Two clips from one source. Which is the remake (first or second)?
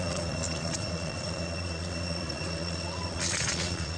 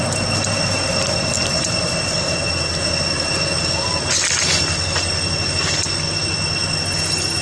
first